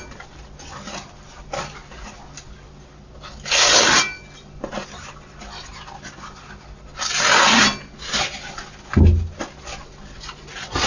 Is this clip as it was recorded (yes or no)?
yes